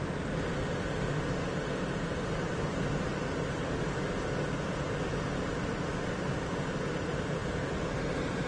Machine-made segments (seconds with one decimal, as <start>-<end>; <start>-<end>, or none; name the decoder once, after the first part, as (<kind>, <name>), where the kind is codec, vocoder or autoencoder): none